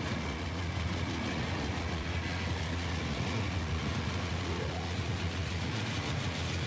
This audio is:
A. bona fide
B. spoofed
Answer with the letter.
B